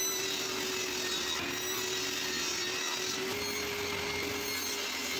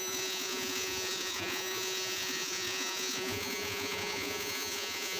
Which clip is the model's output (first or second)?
second